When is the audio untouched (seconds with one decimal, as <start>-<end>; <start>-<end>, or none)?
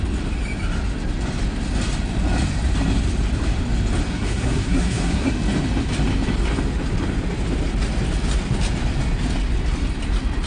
0.0-4.1; 5.3-10.5